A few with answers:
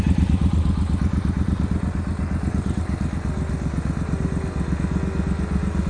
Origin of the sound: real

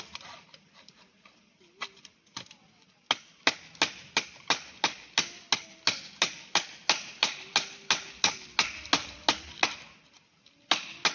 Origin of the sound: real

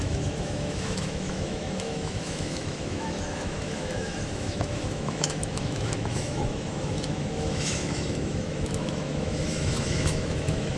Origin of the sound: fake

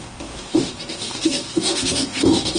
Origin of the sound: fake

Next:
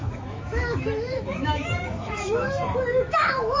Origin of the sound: fake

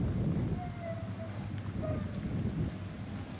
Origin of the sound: real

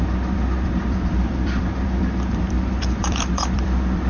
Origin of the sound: fake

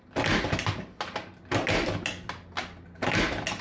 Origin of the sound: real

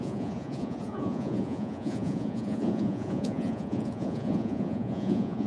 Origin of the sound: fake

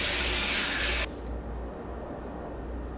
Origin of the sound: real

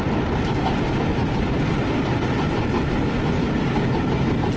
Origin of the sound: real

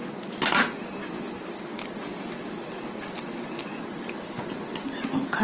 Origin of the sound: real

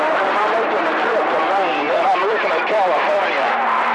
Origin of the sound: fake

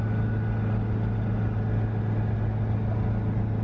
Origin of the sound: real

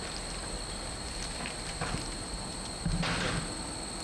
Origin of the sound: real